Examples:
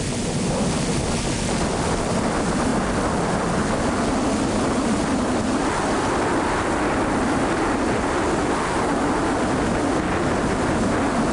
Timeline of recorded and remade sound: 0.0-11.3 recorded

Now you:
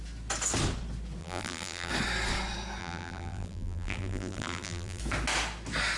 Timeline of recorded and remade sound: 0.0-1.2 recorded; 1.2-1.9 remade; 1.9-2.8 recorded; 2.8-5.0 remade; 5.0-6.0 recorded

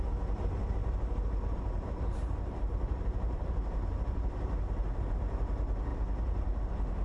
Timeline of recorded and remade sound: 0.0-0.8 recorded; 0.8-5.0 remade; 5.0-5.9 recorded; 5.9-6.6 remade; 6.6-7.0 recorded

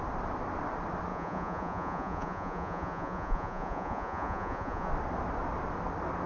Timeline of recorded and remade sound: 0.0-1.1 recorded; 1.1-4.9 remade; 4.9-6.3 recorded

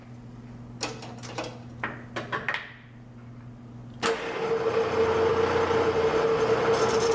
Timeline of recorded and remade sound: 0.0-7.1 recorded

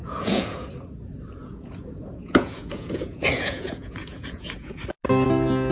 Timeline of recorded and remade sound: 0.0-0.7 remade; 0.7-1.4 recorded; 1.4-4.8 remade; 4.8-5.7 recorded

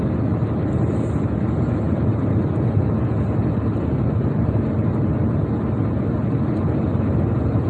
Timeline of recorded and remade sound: 0.0-7.7 recorded